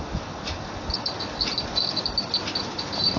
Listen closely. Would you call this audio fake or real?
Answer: real